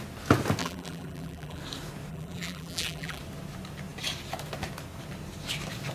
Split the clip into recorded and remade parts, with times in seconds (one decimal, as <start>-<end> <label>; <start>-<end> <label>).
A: 0.0-0.6 recorded; 0.6-1.6 remade; 1.6-2.1 recorded; 2.1-3.2 remade; 3.2-5.9 recorded